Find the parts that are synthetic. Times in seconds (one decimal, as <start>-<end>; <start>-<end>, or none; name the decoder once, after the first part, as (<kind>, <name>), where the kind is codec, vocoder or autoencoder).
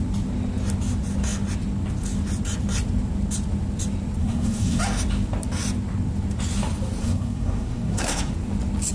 4.2-4.8 (codec, SNAC); 7.0-8.3